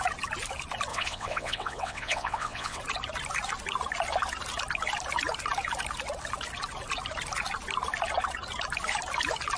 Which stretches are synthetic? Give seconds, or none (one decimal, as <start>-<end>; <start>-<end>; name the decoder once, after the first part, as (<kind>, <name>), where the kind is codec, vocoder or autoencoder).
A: 0.9-2.8 (vocoder, WaveNeXt)